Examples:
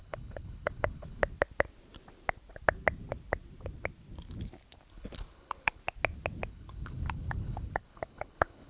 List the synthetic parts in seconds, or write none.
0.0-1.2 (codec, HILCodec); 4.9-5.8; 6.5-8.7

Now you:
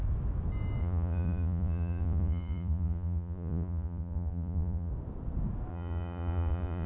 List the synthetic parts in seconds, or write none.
0.8-4.9 (vocoder, Vocos); 5.7-6.9

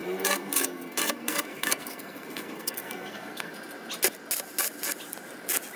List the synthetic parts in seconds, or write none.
0.0-3.5 (codec, SNAC)

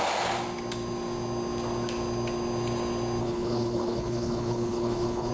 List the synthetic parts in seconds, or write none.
3.2-5.3 (codec, HILCodec)

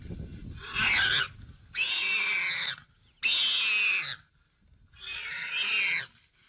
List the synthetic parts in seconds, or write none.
none

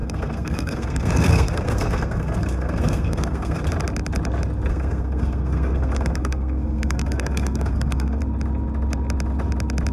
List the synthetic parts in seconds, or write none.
0.0-3.6 (codec, SNAC); 4.7-8.2

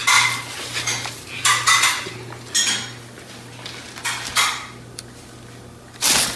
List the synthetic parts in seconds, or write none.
none